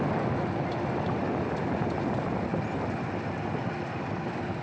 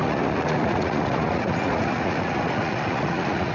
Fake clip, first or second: second